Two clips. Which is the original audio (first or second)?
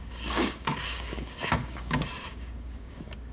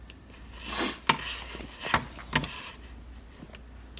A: second